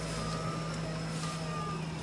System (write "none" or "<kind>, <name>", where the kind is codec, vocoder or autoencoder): none